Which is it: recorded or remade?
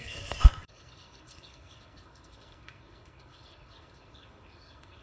remade